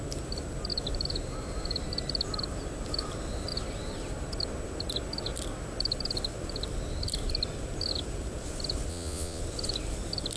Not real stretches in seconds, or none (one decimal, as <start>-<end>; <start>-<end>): 8.9-9.4